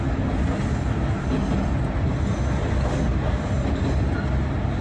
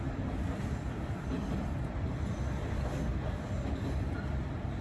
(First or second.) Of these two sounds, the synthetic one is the second